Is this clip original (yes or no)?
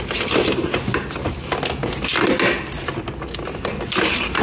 yes